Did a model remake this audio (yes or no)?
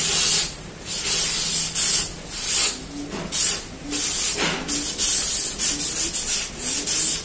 no